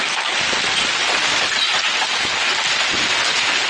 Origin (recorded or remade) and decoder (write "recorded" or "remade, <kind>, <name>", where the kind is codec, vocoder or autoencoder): recorded